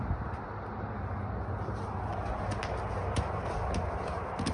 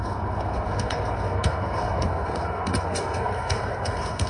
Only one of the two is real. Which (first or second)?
first